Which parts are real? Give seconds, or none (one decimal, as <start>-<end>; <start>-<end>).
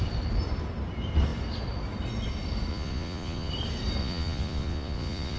0.0-2.7; 3.5-4.0